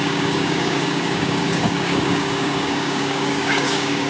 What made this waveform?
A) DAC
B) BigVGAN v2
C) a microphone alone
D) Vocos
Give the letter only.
A